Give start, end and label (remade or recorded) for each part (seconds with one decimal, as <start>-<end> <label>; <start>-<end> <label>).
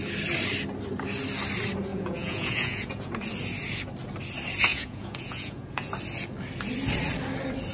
0.0-1.9 recorded; 1.9-3.1 remade; 3.1-4.7 recorded; 4.7-5.9 remade; 5.9-7.7 recorded